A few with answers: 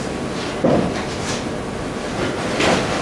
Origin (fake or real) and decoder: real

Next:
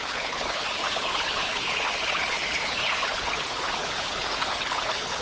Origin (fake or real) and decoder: fake, codec, HILCodec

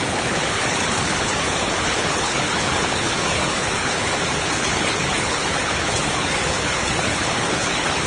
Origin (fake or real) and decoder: fake, codec, HILCodec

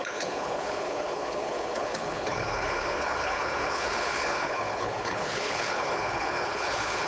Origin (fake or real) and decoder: fake, codec, HILCodec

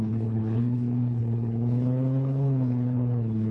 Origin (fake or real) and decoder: fake, codec, HILCodec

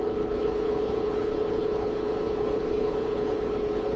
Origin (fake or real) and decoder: fake, codec, HILCodec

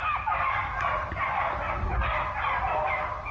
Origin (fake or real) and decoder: real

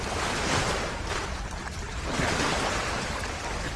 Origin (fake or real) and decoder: real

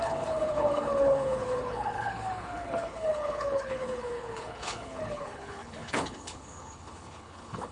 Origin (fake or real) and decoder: fake, codec, HILCodec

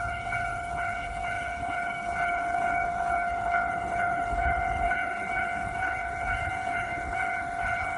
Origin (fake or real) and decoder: fake, codec, HILCodec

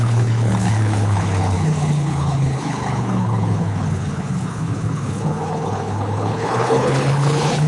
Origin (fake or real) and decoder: fake, codec, HILCodec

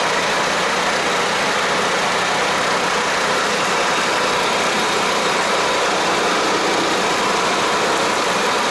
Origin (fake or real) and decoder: real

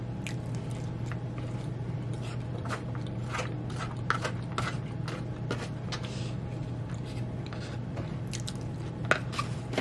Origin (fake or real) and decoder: real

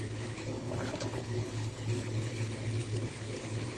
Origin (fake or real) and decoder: fake, codec, HILCodec